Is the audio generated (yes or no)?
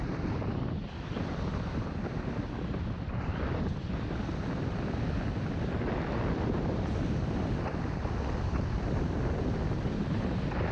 no